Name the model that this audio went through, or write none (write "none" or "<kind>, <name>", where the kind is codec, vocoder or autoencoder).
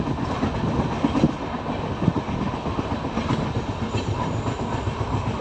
none